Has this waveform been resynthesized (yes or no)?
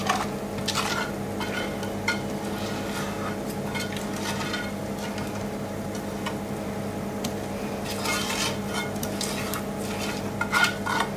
no